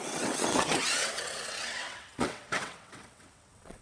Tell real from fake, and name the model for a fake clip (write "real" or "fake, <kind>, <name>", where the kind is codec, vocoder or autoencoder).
fake, vocoder, WaveNeXt